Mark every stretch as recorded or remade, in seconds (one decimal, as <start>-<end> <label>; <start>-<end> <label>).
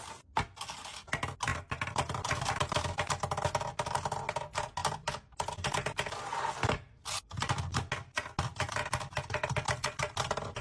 0.0-10.6 recorded